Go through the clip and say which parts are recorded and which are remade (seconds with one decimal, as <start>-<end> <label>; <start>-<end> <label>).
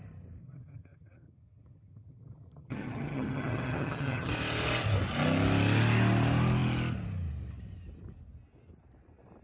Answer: 0.0-0.4 recorded; 0.4-4.3 remade; 4.3-9.4 recorded